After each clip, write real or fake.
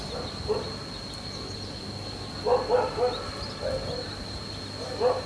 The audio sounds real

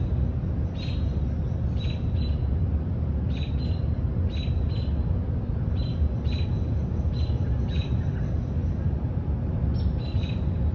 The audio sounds real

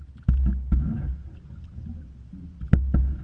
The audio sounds real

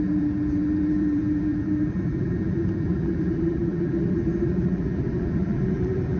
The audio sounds fake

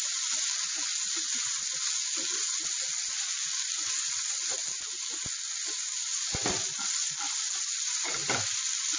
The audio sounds real